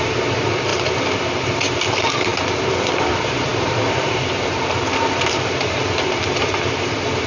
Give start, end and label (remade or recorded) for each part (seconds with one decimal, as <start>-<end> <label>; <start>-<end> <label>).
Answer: 0.0-0.7 remade; 0.7-1.4 recorded; 1.4-2.3 remade; 2.3-3.1 recorded; 3.1-7.3 remade